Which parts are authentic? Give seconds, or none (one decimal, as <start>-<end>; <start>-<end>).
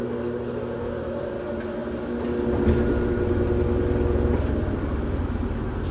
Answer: 0.0-5.9